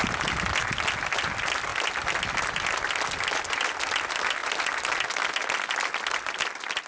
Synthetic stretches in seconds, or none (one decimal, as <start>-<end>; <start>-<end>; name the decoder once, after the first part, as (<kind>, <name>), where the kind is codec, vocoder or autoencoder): none